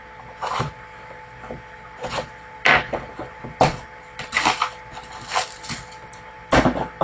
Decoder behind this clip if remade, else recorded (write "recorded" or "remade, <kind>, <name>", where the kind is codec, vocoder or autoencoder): recorded